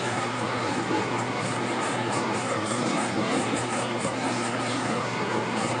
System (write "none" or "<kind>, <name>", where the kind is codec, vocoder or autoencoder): codec, SNAC